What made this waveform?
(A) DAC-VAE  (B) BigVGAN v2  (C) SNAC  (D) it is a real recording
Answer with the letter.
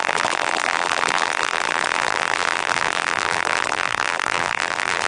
B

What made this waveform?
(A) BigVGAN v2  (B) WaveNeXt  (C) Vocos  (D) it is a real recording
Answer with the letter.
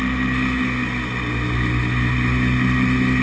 D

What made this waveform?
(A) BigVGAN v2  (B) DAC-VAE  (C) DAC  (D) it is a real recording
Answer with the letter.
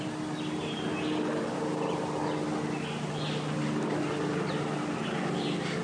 D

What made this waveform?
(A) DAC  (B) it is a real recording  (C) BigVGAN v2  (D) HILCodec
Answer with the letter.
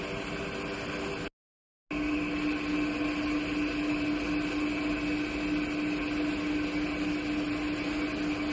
B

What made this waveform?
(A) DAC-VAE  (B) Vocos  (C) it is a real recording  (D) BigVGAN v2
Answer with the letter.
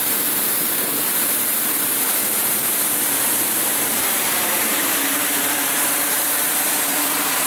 D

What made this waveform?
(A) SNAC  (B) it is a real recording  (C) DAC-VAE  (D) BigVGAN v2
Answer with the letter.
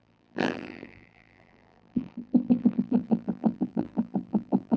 D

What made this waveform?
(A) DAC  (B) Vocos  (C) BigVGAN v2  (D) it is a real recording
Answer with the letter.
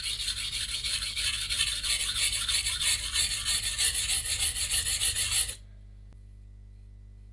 D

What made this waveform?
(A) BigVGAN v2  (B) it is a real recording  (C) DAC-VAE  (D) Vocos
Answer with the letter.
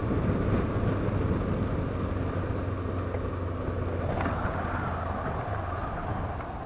B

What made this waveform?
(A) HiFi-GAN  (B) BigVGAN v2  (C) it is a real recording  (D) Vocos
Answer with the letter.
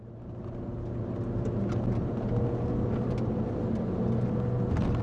C